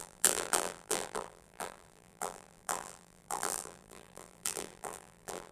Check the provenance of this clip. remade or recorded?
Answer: remade